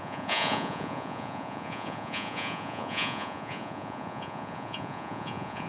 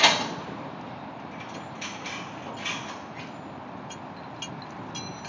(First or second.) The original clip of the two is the second